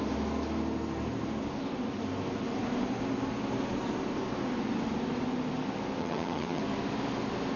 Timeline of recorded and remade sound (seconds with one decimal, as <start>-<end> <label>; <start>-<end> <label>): 0.0-6.0 recorded; 6.0-6.6 remade; 6.6-7.6 recorded